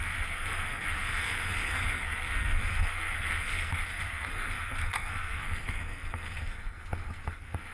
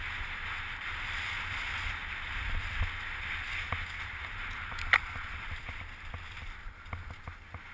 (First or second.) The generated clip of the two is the first